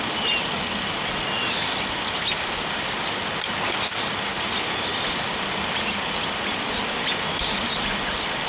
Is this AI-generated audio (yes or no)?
no